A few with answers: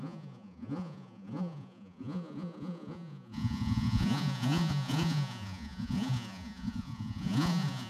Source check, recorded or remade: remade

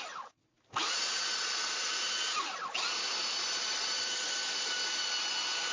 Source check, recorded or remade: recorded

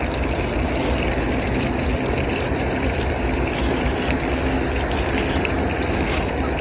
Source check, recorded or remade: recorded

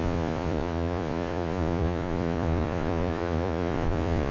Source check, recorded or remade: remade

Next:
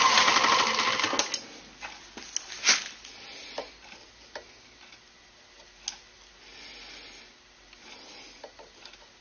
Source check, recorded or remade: recorded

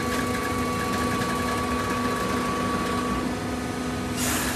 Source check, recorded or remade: recorded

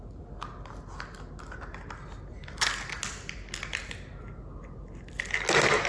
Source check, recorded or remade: recorded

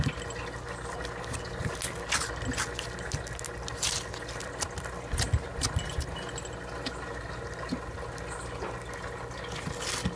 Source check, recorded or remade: recorded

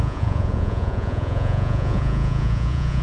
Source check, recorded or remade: remade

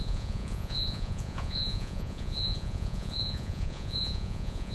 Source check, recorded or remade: remade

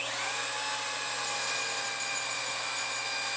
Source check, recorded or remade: recorded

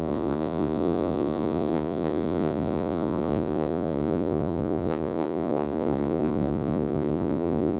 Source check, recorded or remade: remade